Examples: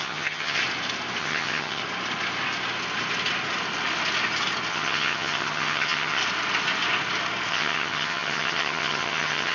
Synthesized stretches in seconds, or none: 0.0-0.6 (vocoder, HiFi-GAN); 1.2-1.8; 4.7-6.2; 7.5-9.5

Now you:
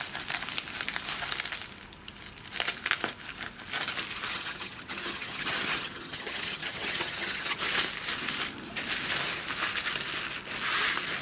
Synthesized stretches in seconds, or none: 4.3-7.6 (vocoder, HiFi-GAN)